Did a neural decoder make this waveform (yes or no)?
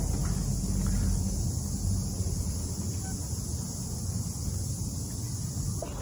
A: no